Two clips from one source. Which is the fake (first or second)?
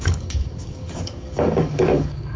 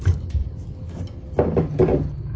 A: first